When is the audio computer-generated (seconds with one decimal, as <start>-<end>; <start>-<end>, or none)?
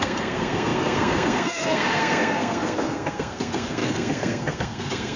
0.0-5.2